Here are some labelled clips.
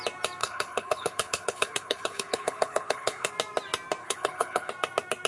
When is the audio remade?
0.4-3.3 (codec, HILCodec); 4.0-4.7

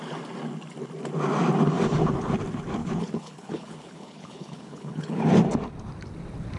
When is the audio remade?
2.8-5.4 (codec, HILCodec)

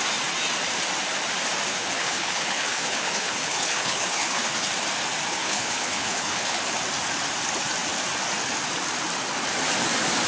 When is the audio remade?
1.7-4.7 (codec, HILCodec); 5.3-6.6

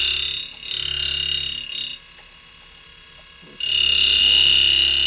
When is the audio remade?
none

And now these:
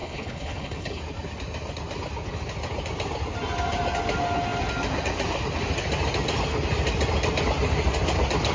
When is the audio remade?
0.0-1.0 (codec, HILCodec)

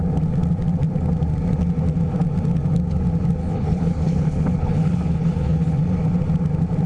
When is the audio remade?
3.4-5.8 (codec, HILCodec)

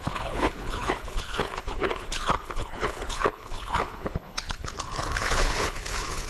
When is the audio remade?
0.0-6.3 (codec, HILCodec)